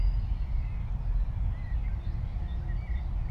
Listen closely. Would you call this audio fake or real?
real